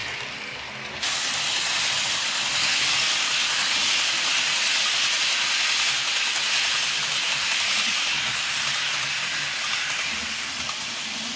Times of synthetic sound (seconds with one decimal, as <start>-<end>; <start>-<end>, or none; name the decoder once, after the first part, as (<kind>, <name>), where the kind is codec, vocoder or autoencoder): 3.6-5.2 (vocoder, Vocos)

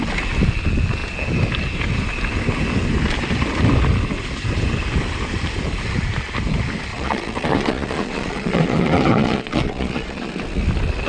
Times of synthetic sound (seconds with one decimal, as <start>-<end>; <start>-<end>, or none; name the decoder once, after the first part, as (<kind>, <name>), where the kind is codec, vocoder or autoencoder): 6.9-10.3 (vocoder, Vocos)

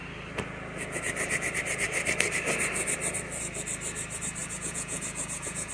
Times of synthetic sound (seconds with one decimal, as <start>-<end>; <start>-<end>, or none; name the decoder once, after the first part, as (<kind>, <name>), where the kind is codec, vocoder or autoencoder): 4.4-5.7 (vocoder, Vocos)

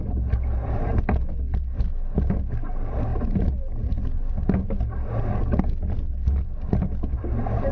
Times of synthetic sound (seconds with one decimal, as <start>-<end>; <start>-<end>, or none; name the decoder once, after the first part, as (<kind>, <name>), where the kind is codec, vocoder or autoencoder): none

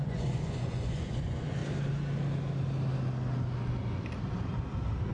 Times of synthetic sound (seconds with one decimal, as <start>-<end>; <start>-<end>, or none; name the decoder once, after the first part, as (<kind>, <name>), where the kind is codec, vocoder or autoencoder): 0.0-1.6 (vocoder, Vocos)

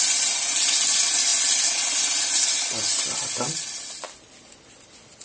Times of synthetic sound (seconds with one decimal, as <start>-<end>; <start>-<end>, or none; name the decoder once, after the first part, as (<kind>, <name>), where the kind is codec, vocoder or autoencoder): none

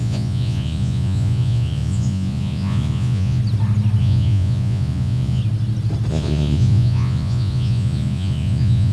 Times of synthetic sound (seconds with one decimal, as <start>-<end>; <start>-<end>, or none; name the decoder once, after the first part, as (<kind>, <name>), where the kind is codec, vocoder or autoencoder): 0.0-3.4 (vocoder, Vocos); 4.0-5.4; 6.1-8.9